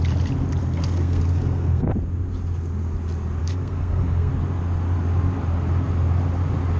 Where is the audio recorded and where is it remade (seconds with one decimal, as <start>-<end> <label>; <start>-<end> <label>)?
0.0-0.6 recorded; 0.6-1.9 remade; 1.9-3.4 recorded; 3.4-4.3 remade; 4.3-6.8 recorded